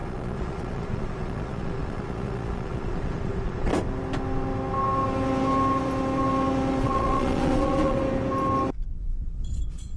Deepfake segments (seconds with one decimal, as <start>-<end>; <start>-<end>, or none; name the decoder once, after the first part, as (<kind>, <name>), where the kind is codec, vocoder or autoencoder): 0.0-3.7 (vocoder, Vocos); 6.8-8.0; 9.2-10.0